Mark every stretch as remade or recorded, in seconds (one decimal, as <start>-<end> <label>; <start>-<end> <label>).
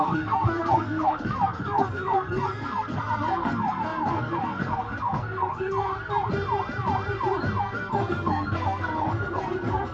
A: 0.0-5.9 remade; 5.9-7.6 recorded; 7.6-9.9 remade